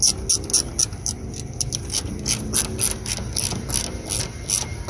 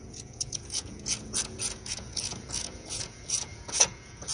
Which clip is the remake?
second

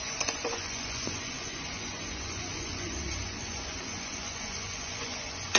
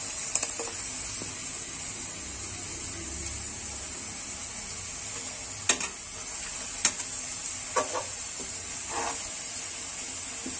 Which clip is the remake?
first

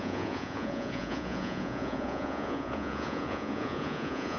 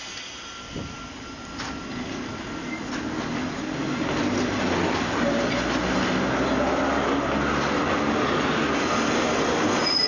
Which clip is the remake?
first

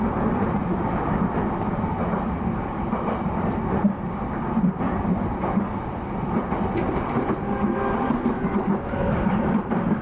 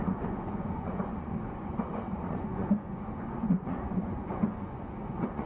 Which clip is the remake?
second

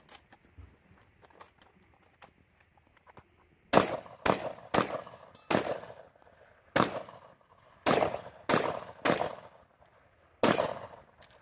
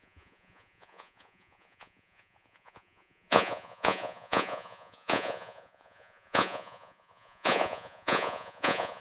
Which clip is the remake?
second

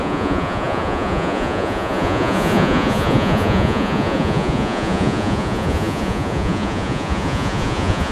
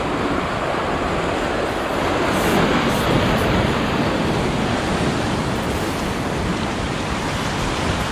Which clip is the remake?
first